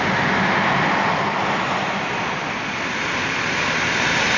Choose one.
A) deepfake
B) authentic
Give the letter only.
B